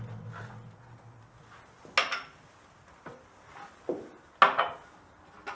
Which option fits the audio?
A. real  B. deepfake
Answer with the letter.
A